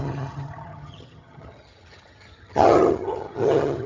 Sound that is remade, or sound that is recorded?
remade